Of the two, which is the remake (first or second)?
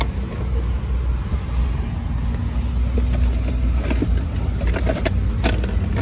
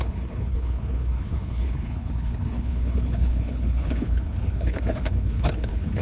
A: second